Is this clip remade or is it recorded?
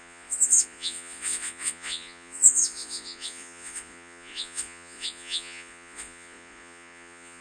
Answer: remade